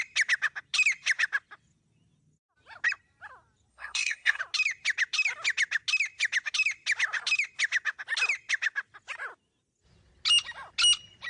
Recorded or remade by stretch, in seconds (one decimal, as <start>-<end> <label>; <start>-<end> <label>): 0.0-3.7 recorded; 3.7-4.4 remade; 4.4-11.3 recorded